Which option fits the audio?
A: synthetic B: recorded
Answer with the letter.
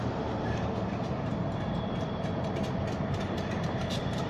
A